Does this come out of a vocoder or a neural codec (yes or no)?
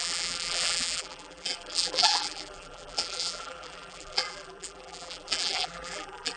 yes